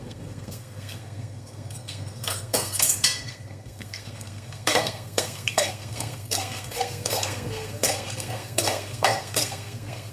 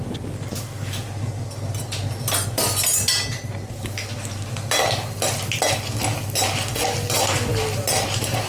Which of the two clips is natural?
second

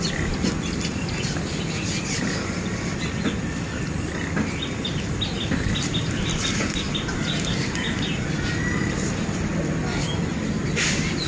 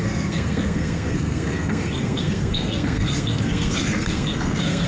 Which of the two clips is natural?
first